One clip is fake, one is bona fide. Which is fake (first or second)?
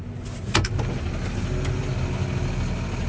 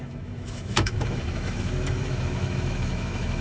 second